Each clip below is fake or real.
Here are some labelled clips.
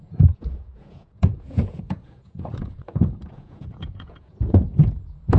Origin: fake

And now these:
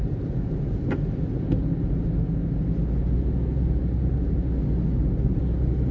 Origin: real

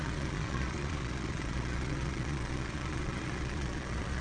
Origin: fake